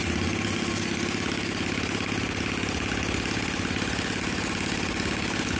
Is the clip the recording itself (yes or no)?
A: yes